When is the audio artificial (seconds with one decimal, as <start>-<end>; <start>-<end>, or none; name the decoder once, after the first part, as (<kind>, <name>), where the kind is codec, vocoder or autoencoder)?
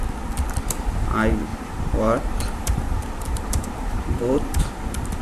1.5-4.6 (vocoder, BigVGAN v2)